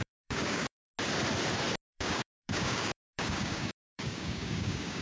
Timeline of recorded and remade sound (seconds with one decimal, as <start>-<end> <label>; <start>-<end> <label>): 0.0-0.9 remade; 0.9-1.9 recorded; 1.9-5.0 remade